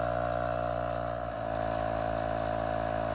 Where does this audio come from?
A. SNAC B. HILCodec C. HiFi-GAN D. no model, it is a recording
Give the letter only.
D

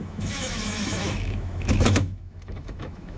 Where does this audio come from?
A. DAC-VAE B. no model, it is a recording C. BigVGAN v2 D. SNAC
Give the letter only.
A